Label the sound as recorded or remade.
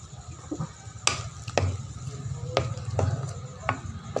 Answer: recorded